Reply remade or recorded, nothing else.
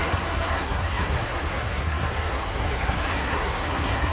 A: remade